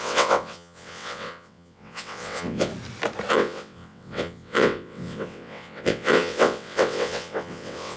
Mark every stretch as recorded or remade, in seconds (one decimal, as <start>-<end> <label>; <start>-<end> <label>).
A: 0.0-2.7 remade; 2.7-3.3 recorded; 3.3-8.0 remade